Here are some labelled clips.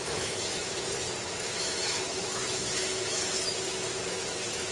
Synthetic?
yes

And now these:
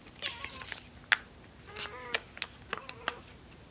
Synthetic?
no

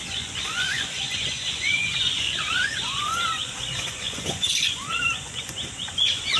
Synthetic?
yes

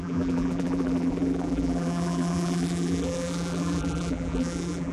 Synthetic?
yes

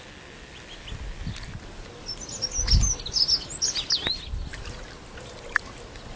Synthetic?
no